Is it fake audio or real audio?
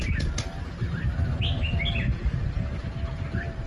real